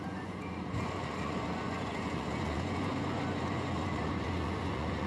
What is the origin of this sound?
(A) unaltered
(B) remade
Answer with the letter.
B